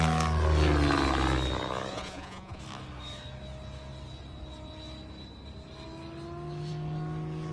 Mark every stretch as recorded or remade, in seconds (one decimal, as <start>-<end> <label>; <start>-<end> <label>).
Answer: 0.0-1.9 recorded; 1.9-2.6 remade; 2.6-7.5 recorded